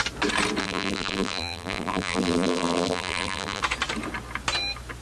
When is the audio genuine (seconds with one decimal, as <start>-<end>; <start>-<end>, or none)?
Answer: 0.0-0.6; 3.6-5.0